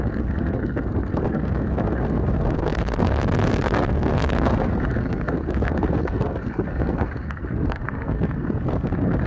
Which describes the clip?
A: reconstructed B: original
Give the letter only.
A